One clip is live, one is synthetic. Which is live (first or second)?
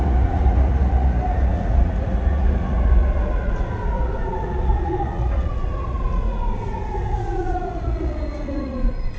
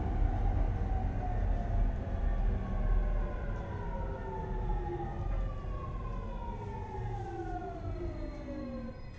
second